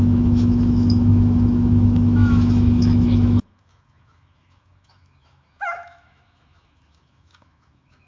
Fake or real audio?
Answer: fake